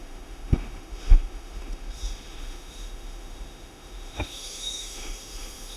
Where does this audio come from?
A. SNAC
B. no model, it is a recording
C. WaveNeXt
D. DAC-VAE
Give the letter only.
D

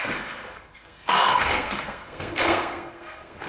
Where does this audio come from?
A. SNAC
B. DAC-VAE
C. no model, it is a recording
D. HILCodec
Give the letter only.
A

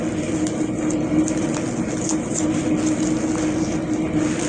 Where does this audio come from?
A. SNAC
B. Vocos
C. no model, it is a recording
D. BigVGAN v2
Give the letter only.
C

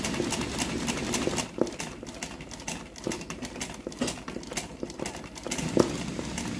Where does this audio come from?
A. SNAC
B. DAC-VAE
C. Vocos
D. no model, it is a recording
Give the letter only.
D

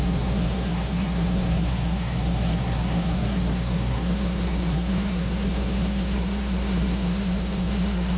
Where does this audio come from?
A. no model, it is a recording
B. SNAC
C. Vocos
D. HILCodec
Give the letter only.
B